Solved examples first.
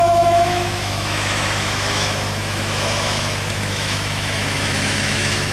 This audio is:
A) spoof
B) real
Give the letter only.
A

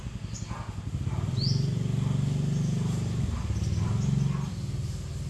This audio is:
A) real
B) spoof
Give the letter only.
A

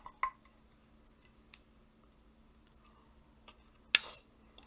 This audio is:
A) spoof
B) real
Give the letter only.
B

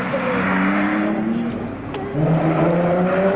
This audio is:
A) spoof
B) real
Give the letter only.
B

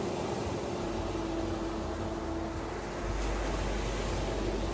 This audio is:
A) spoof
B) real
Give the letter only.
B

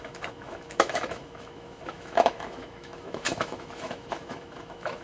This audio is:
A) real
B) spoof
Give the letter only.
B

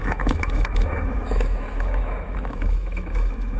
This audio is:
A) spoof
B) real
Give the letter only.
A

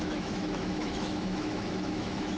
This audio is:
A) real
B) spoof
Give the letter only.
B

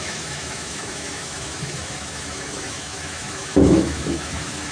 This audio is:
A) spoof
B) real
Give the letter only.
A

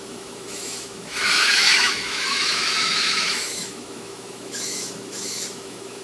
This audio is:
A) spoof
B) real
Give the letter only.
A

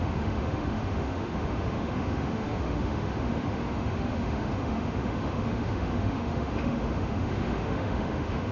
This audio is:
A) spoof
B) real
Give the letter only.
A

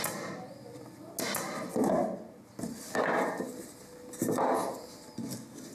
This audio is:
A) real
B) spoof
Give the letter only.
A